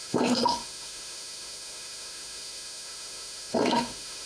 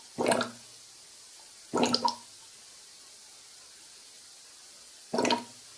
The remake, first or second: first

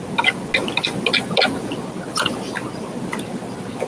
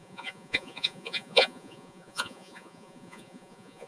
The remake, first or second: second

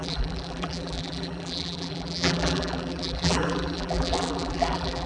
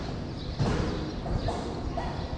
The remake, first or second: first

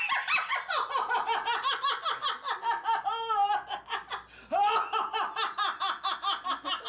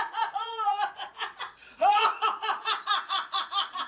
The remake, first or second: second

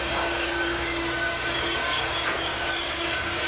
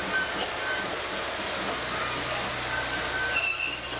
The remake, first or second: first